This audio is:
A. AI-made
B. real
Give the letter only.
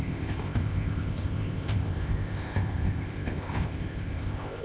A